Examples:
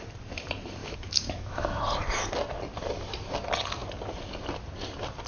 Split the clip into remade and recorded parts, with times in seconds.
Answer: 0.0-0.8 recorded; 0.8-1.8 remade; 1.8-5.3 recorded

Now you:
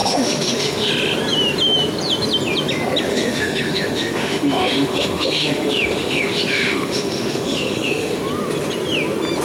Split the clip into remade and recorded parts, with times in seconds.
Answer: 0.0-0.9 remade; 0.9-3.1 recorded; 3.1-8.2 remade; 8.2-9.4 recorded

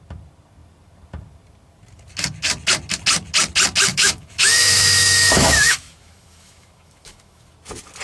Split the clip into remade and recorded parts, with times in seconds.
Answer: 0.0-3.9 recorded; 3.9-7.5 remade; 7.5-8.0 recorded

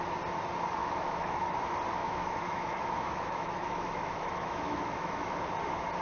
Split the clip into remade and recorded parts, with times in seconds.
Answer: 0.0-0.8 recorded; 0.8-1.6 remade; 1.6-2.0 recorded; 2.0-5.4 remade; 5.4-6.0 recorded

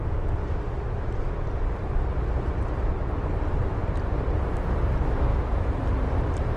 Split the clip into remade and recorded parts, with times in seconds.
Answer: 0.0-5.3 recorded; 5.3-5.8 remade; 5.8-6.6 recorded

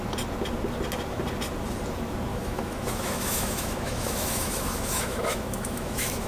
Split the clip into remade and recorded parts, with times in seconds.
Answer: 0.0-2.3 recorded; 2.3-6.3 remade

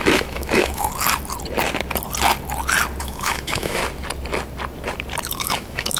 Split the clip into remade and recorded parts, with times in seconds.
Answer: 0.0-0.9 remade; 0.9-3.0 recorded; 3.0-3.8 remade; 3.8-5.3 recorded; 5.3-6.0 remade

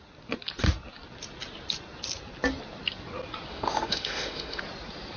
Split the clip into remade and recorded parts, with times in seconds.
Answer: 0.0-3.5 recorded; 3.5-4.6 remade; 4.6-5.2 recorded